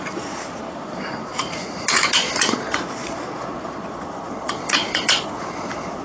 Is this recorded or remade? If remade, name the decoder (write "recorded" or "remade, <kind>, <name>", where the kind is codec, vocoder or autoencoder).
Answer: remade, vocoder, Vocos